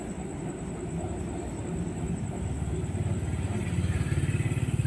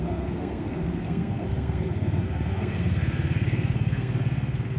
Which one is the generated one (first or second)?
second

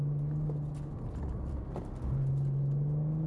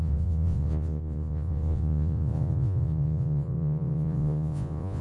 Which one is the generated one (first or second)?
second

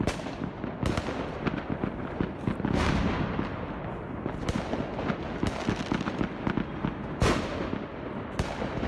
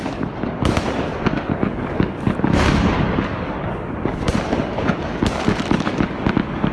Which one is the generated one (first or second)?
second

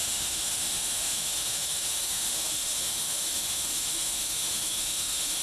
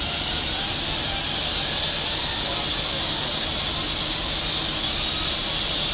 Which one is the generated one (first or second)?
first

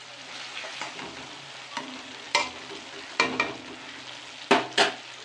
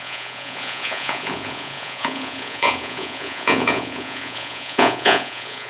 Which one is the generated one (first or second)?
second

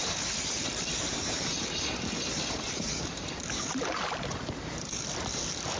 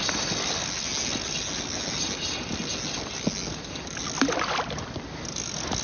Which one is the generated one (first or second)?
first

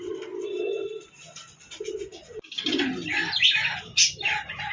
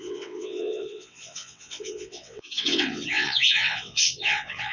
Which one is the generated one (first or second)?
second